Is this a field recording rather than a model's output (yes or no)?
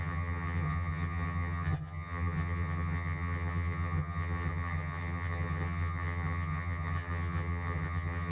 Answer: no